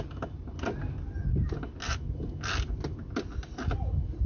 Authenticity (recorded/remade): recorded